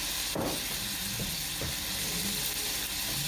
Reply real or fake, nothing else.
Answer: real